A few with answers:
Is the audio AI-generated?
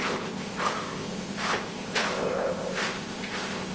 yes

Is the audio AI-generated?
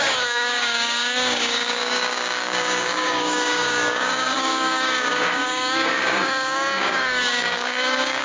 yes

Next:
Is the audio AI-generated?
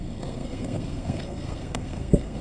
yes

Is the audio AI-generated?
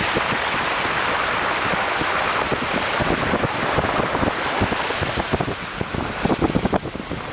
no